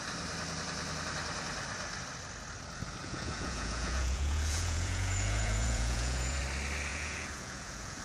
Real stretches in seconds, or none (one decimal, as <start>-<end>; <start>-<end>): 0.0-3.0; 6.4-6.9